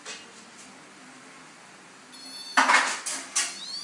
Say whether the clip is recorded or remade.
recorded